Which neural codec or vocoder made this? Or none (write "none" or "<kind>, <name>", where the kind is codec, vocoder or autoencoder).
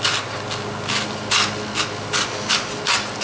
none